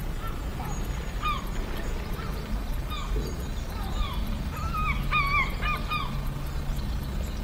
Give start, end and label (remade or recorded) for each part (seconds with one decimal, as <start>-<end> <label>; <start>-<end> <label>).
0.0-7.4 recorded